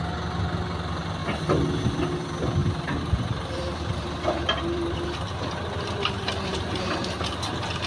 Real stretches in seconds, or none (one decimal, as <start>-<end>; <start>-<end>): 0.0-2.6; 7.3-7.9